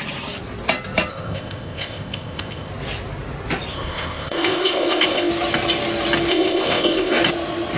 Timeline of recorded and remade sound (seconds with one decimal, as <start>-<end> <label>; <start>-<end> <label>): 0.0-1.1 recorded; 1.1-2.7 remade; 2.7-3.7 recorded; 3.7-5.3 remade; 5.3-6.3 recorded; 6.3-7.2 remade; 7.2-7.8 recorded